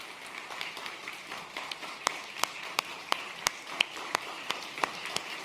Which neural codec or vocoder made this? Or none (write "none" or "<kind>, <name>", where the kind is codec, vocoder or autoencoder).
vocoder, BigVGAN v2